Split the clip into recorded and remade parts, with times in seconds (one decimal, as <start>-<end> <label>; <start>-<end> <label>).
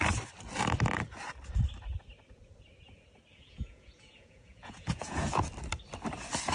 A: 0.0-3.3 recorded; 3.3-5.4 remade; 5.4-6.5 recorded